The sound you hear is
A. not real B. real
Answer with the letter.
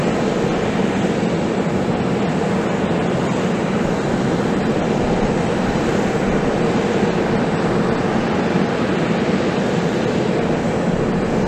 B